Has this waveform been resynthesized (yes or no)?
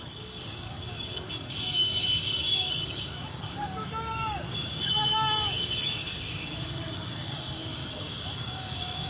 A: yes